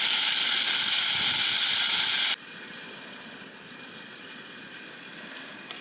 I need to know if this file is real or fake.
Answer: real